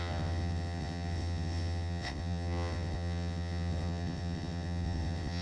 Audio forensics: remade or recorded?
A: remade